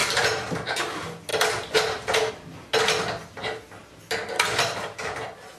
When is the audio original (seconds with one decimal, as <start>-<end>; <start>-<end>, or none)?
0.0-5.6